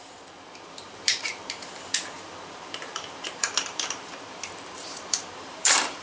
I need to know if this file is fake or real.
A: fake